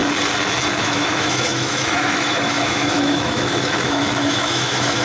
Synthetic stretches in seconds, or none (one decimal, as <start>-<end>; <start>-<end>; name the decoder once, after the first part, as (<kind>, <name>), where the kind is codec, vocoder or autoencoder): 0.8-5.0 (autoencoder, DAC-VAE)